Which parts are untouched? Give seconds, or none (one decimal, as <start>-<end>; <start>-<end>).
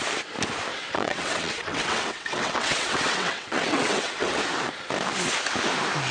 0.0-0.7; 4.4-6.1